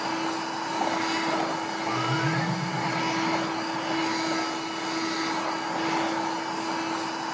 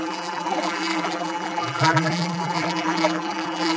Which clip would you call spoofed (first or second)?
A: second